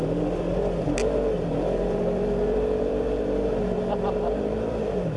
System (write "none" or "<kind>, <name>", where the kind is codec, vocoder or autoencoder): vocoder, BigVGAN v2